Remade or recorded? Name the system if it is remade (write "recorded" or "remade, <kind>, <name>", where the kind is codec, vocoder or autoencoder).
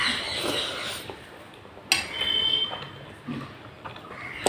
recorded